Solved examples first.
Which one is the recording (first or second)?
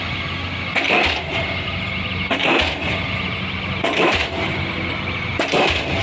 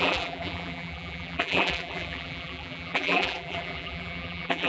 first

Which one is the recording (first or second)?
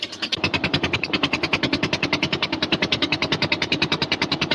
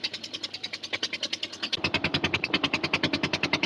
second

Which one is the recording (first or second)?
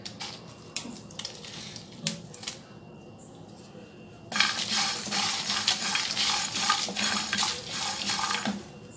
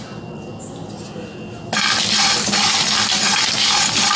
second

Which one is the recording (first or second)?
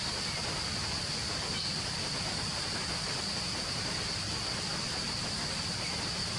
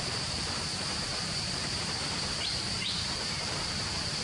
first